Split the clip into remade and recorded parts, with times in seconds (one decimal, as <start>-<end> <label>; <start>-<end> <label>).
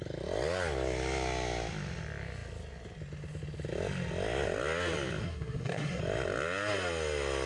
0.0-5.2 recorded; 5.2-6.0 remade; 6.0-7.5 recorded